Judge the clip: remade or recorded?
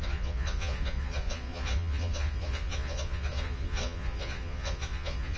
remade